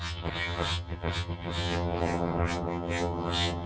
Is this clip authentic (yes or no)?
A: no